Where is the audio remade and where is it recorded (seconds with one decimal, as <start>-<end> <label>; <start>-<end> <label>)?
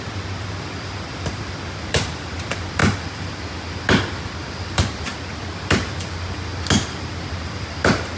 0.0-2.8 remade; 2.8-4.5 recorded; 4.5-5.1 remade; 5.1-5.6 recorded; 5.6-6.5 remade; 6.5-7.4 recorded; 7.4-8.2 remade